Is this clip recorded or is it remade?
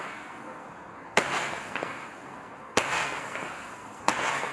remade